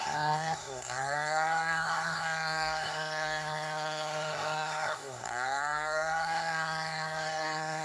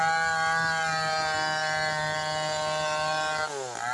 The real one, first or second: second